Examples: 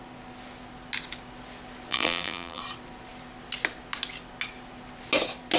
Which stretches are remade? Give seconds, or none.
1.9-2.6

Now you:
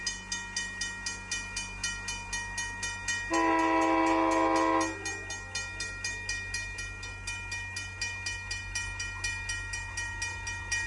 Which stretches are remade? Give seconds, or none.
none

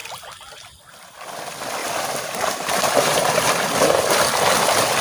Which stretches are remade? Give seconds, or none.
1.8-3.5

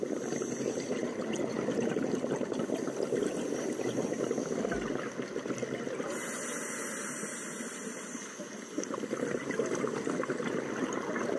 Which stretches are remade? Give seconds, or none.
none

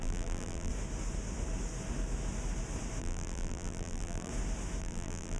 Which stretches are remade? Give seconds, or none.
0.0-0.7; 3.0-4.3; 4.8-5.4

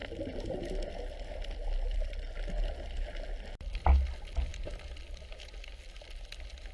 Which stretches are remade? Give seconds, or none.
none

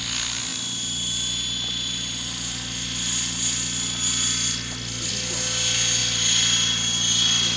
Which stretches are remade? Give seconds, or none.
6.0-7.6